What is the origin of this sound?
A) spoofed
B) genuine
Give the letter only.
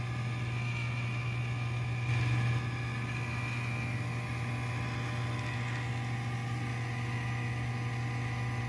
B